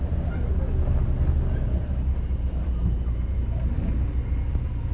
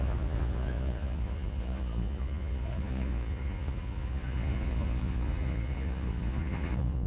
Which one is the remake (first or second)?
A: second